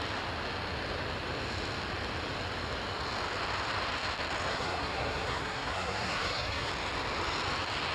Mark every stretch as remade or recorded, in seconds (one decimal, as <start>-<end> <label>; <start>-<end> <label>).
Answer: 0.0-4.5 recorded; 4.5-6.7 remade; 6.7-7.9 recorded